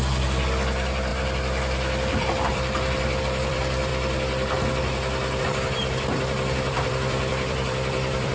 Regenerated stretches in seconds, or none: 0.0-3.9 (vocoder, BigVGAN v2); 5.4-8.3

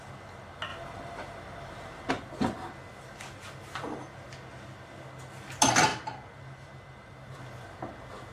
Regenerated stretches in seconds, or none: 0.7-2.1 (vocoder, BigVGAN v2); 5.9-7.4

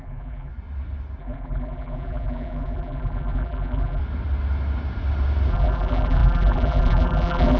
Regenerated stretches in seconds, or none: 0.0-0.5 (vocoder, BigVGAN v2); 1.2-4.0; 5.5-7.6

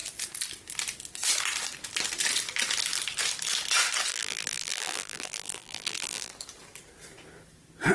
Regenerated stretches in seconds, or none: 4.1-6.3 (vocoder, BigVGAN v2)

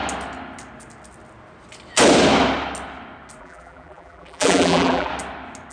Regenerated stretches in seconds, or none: 3.4-5.1 (vocoder, BigVGAN v2)